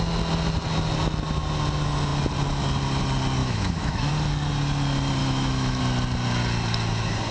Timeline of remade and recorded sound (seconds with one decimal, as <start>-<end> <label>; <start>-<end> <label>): 0.0-3.4 recorded; 3.4-4.1 remade; 4.1-5.2 recorded; 5.2-5.8 remade; 5.8-7.3 recorded